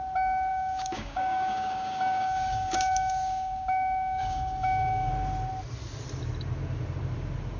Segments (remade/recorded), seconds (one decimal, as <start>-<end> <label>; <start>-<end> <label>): 0.0-0.5 recorded; 0.5-5.1 remade; 5.1-7.6 recorded